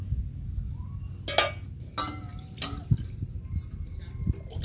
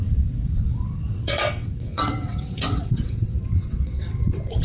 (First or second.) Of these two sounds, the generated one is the second